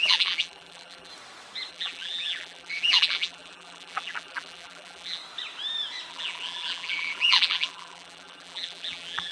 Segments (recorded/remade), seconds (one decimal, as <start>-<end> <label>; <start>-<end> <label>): 0.0-1.1 remade; 1.1-1.7 recorded; 1.7-5.2 remade; 5.2-6.1 recorded; 6.1-9.3 remade